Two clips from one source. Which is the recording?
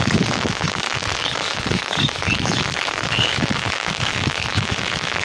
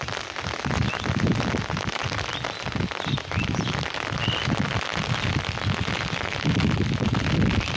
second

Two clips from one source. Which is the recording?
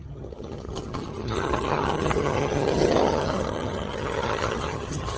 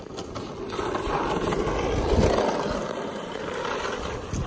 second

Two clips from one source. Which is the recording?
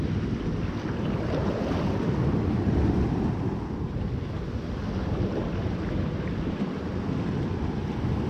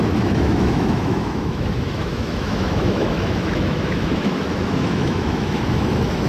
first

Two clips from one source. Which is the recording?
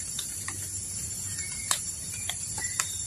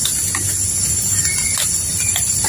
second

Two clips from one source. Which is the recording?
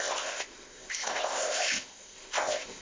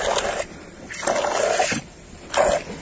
second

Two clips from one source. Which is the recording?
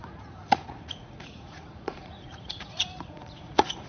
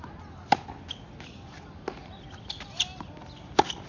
second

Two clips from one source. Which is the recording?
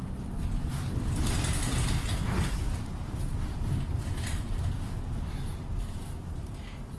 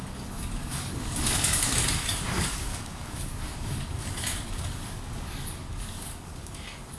first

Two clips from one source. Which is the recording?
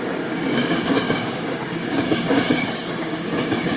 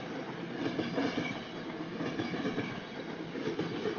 second